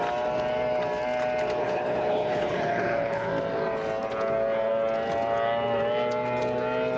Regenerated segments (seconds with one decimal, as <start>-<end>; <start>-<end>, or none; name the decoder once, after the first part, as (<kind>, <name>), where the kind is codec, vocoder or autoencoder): 1.6-3.3 (codec, HILCodec)